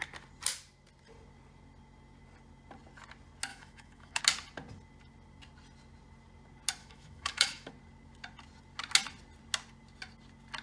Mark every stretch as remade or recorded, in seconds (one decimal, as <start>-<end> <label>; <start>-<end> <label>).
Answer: 0.0-3.5 recorded; 3.5-4.2 remade; 4.2-6.8 recorded; 6.8-7.7 remade; 7.7-10.6 recorded